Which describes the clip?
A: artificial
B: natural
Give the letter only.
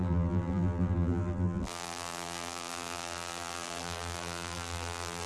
A